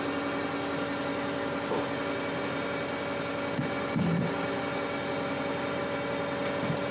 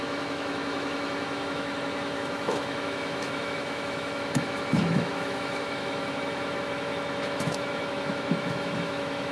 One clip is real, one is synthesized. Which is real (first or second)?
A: first